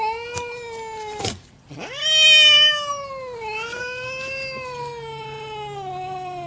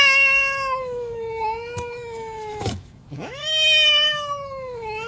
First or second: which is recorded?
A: first